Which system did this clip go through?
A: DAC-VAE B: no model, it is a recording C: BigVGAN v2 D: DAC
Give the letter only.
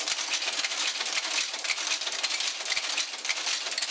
B